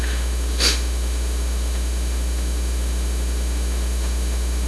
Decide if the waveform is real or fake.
fake